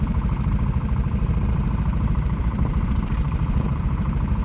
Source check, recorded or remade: remade